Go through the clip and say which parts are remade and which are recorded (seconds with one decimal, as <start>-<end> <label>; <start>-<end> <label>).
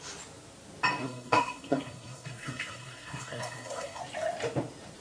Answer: 0.0-1.0 recorded; 1.0-4.0 remade; 4.0-5.0 recorded